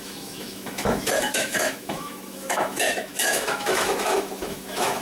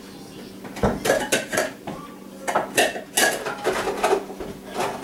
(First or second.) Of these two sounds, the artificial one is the first